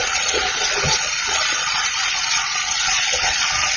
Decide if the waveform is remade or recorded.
remade